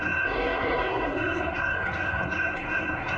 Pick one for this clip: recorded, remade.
remade